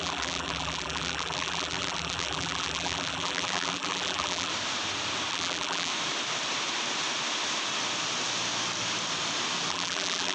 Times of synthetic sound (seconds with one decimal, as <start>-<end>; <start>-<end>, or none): 0.0-4.5; 5.3-5.9; 9.7-10.3